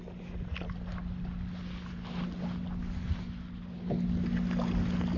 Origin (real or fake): real